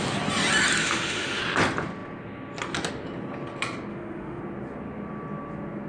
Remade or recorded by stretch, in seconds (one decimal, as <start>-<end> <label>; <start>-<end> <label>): 0.0-0.8 recorded; 0.8-1.4 remade; 1.4-3.9 recorded; 3.9-4.4 remade; 4.4-5.9 recorded